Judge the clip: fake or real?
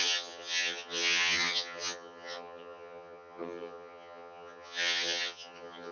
fake